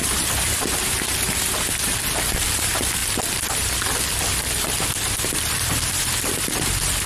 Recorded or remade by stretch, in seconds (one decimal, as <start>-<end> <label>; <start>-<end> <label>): 0.0-3.0 remade; 3.0-4.9 recorded; 4.9-7.1 remade